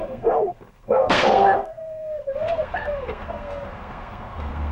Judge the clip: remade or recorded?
remade